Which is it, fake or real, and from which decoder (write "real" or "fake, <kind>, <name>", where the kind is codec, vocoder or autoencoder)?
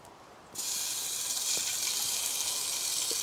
real